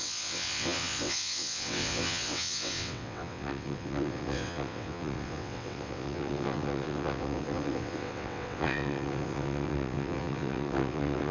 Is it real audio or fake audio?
fake